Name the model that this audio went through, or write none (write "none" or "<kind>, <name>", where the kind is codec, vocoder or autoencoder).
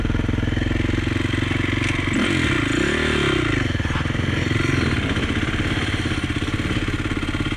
none